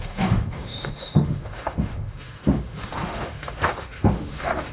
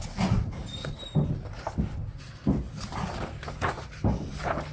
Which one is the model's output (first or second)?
first